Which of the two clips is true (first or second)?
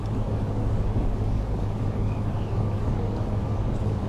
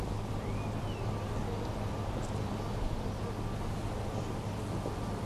second